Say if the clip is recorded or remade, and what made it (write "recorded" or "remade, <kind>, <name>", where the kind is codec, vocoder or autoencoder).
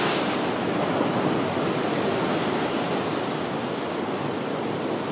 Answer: recorded